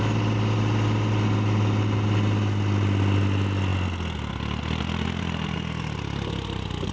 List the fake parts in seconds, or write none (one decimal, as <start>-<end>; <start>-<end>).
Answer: none